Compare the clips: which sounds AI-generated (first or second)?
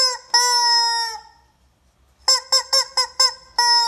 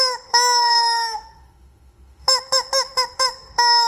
second